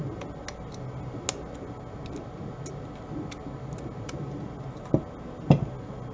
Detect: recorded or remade recorded